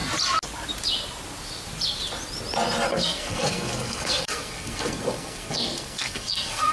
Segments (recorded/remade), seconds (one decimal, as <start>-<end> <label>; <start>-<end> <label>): 0.0-2.9 recorded; 2.9-6.7 remade